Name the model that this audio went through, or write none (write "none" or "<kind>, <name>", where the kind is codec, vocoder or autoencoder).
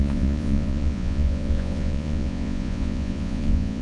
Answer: vocoder, Vocos